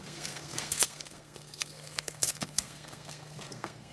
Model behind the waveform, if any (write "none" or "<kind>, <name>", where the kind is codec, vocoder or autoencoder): codec, SNAC